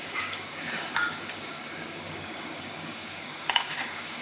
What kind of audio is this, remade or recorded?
remade